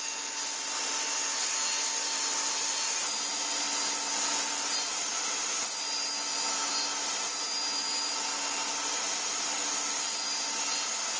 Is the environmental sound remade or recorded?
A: recorded